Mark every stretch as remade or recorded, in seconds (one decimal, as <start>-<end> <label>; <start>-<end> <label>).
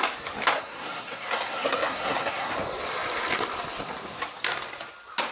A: 0.0-0.6 recorded; 0.6-2.5 remade; 2.5-5.3 recorded